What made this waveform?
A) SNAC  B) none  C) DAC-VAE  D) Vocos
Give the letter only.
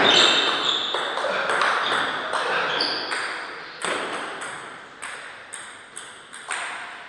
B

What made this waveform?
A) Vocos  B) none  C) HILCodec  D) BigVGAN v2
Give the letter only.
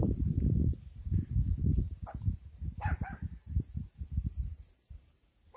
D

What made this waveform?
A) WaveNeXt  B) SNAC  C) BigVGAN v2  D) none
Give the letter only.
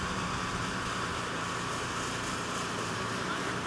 C